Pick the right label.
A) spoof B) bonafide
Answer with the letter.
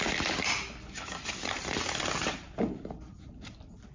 B